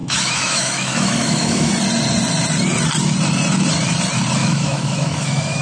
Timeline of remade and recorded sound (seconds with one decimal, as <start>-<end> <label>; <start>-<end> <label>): 0.0-1.7 remade; 1.7-4.4 recorded; 4.4-5.6 remade